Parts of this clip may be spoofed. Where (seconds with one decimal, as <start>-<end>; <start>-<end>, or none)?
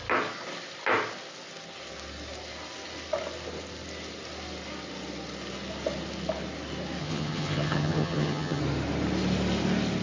7.0-8.6